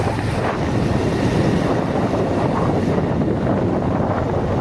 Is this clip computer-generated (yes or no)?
yes